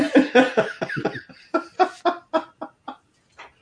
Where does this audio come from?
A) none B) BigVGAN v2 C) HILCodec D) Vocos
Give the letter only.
A